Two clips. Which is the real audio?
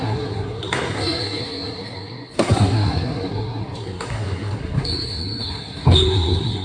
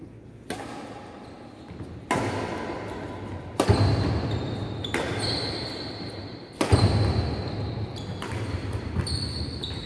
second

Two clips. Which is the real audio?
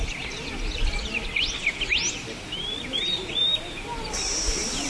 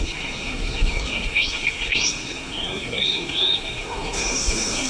first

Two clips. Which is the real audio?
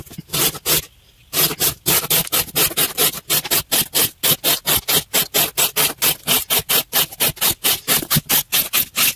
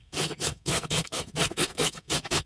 first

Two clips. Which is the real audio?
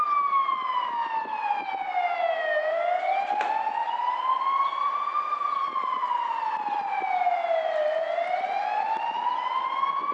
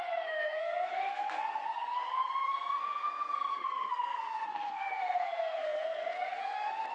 first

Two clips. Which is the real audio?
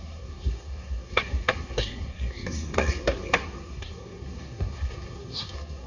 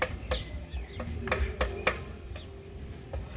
second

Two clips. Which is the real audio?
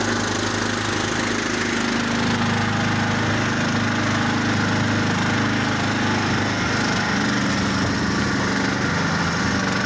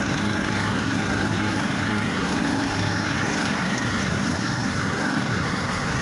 first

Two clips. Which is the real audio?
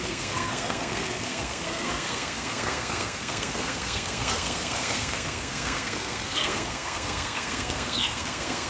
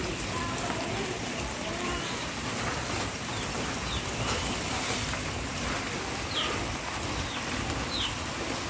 second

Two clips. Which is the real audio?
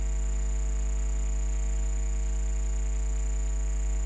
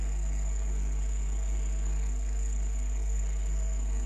first